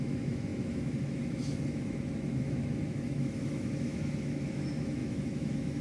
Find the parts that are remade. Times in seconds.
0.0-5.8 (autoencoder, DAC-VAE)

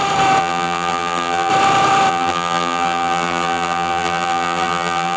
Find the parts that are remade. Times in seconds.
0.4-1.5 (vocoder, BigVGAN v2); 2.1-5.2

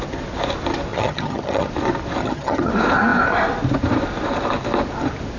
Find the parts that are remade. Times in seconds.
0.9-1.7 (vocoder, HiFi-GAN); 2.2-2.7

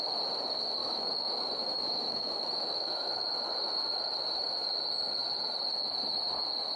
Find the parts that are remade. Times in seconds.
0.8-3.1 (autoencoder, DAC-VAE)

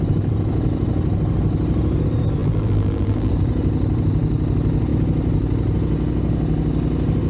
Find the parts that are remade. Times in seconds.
2.4-3.3 (vocoder, BigVGAN v2)

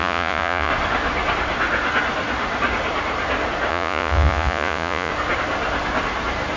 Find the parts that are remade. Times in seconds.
0.0-0.7 (vocoder, Vocos); 3.7-5.1